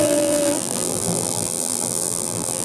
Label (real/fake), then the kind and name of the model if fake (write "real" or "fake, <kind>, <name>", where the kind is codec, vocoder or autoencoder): fake, vocoder, BigVGAN v2